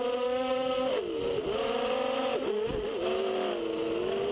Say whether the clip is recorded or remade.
recorded